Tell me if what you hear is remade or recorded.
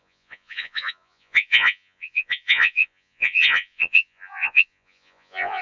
remade